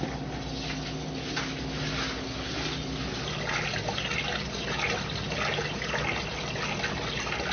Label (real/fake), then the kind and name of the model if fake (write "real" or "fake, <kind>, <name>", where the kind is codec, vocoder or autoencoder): real